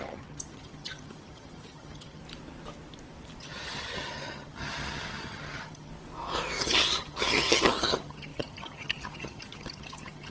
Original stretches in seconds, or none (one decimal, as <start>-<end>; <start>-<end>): 2.2-3.4; 5.9-6.6

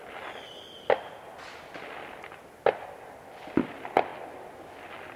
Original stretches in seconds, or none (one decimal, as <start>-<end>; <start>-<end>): 0.0-3.1; 4.1-5.2

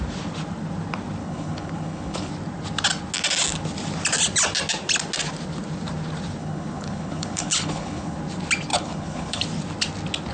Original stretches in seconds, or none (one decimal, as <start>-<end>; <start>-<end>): 0.0-1.2; 2.3-6.4; 8.2-8.7; 9.4-10.3

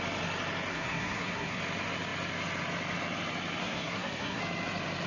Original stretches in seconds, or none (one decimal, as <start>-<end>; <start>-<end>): 0.0-0.7; 1.6-3.6; 4.4-5.1

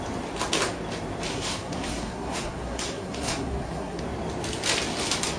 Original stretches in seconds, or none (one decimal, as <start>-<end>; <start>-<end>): 0.0-1.3; 4.0-5.4